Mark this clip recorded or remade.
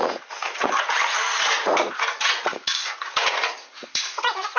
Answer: remade